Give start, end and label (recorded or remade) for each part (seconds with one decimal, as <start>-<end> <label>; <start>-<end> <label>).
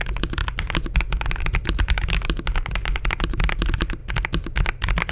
0.0-5.1 recorded